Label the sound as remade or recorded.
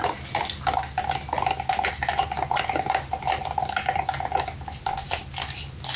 recorded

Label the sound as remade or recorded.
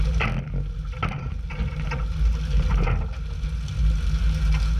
recorded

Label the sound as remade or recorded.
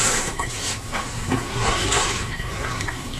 remade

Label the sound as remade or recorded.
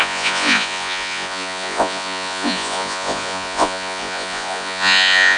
remade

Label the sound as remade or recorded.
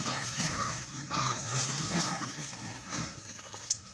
remade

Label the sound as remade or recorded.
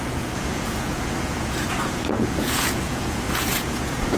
remade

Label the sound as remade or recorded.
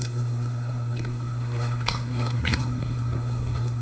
remade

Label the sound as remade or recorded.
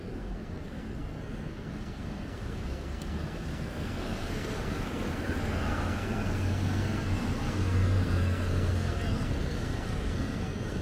remade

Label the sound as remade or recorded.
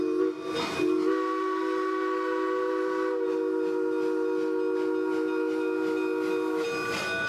recorded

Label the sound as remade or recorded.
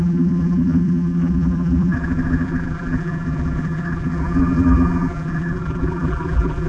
remade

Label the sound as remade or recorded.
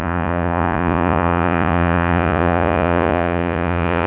remade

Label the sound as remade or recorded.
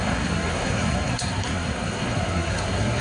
remade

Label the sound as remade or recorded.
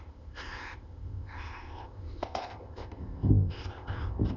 remade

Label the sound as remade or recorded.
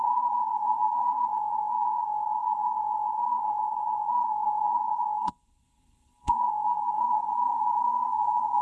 remade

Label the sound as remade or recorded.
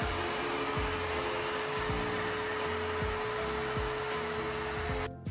recorded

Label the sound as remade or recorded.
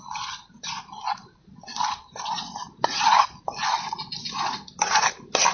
recorded